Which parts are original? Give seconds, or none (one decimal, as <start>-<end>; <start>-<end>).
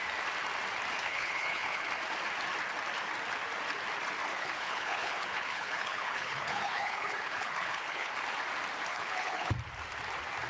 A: 0.0-1.0; 1.9-4.3; 8.1-8.9; 9.5-10.5